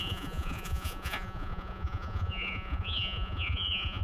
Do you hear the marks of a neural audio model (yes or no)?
yes